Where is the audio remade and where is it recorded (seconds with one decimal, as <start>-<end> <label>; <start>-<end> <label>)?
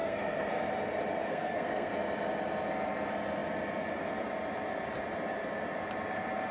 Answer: 0.0-0.6 remade; 0.6-1.2 recorded; 1.2-1.9 remade; 1.9-6.5 recorded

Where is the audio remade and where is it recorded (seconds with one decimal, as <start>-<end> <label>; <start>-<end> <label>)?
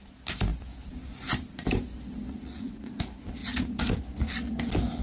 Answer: 0.0-2.3 recorded; 2.3-2.9 remade; 2.9-5.0 recorded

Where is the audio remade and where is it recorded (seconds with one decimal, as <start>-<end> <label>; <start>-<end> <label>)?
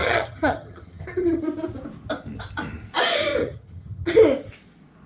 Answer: 0.0-1.4 remade; 1.4-3.4 recorded; 3.4-4.1 remade; 4.1-5.1 recorded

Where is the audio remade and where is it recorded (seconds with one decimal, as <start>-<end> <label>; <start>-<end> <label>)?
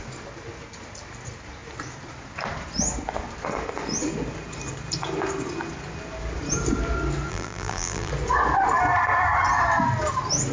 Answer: 0.0-7.3 recorded; 7.3-8.1 remade; 8.1-10.5 recorded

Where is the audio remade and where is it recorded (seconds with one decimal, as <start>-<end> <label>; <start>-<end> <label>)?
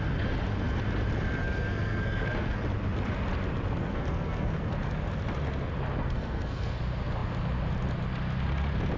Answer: 0.0-1.4 recorded; 1.4-2.6 remade; 2.6-3.8 recorded; 3.8-4.7 remade; 4.7-6.0 recorded; 6.0-6.8 remade; 6.8-9.0 recorded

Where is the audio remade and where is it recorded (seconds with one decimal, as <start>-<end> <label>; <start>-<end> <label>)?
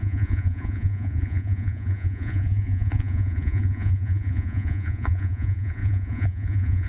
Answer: 0.0-6.9 remade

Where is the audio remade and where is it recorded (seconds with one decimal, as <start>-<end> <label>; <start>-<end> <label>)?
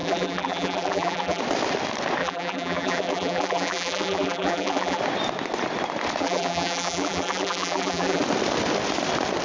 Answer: 0.0-1.4 remade; 1.4-2.2 recorded; 2.2-5.0 remade; 5.0-6.2 recorded; 6.2-8.2 remade; 8.2-9.4 recorded